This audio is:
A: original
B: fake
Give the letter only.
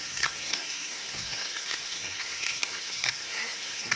B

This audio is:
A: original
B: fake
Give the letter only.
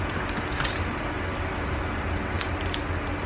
A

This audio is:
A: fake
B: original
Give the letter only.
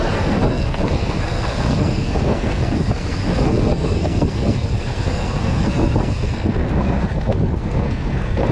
A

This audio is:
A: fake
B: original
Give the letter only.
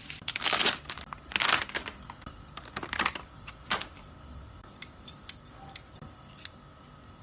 B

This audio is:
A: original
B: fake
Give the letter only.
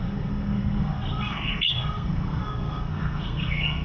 B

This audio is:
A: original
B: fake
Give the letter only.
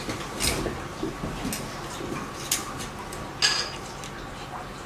A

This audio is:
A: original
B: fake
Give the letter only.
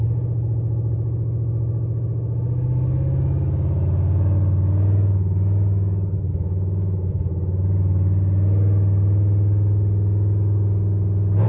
A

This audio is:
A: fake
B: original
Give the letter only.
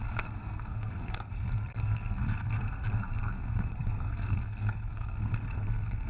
A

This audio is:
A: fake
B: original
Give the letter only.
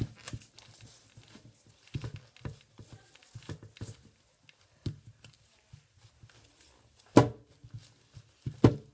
B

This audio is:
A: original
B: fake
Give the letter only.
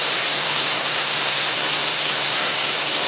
B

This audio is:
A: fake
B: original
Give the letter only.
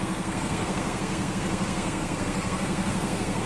A